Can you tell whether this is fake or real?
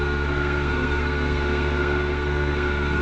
fake